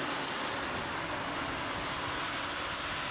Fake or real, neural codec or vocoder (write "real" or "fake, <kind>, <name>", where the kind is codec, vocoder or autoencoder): real